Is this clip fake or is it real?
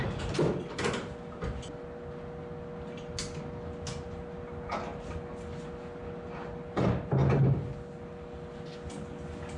real